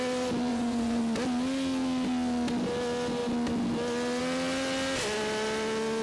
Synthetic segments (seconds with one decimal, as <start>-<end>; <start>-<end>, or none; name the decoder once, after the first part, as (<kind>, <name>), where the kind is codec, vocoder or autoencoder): 0.5-1.0 (vocoder, Vocos)